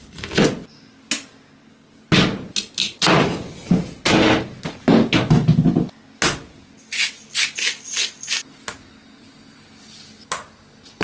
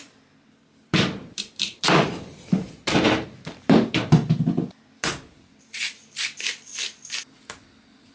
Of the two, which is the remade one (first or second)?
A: second